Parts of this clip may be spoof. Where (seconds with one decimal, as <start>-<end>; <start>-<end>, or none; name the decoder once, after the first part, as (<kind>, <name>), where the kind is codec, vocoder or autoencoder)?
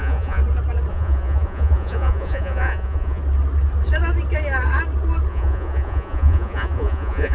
0.0-0.4 (vocoder, Vocos); 0.9-3.2; 5.3-7.3